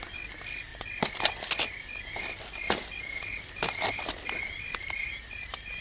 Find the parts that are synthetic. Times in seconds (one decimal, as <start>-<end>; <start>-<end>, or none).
5.0-5.8